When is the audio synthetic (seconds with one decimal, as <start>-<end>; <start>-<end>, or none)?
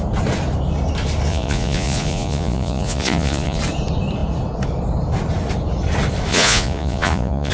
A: 1.3-3.6; 6.3-7.5